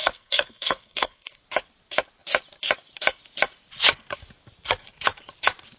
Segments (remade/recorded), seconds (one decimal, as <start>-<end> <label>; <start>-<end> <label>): 0.0-1.4 remade; 1.4-5.8 recorded